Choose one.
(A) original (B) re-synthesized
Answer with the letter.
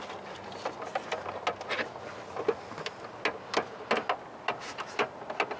A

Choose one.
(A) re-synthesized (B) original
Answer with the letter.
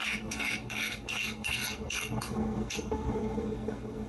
A